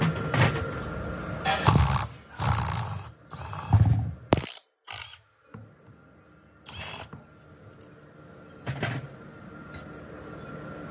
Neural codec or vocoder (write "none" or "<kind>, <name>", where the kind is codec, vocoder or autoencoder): none